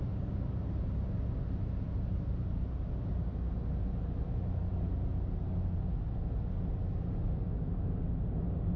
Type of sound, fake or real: real